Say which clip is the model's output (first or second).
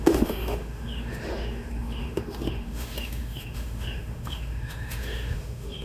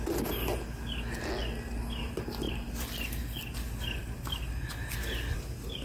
first